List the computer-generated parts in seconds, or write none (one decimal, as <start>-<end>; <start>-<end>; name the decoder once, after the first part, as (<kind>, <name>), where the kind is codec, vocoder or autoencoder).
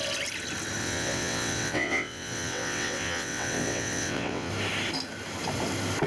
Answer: 0.8-4.5 (vocoder, WaveNeXt)